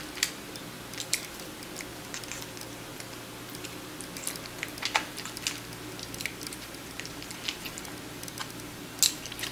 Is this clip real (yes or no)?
yes